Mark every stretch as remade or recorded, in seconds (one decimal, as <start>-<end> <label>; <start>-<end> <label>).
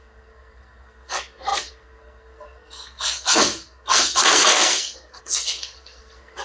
0.0-6.4 remade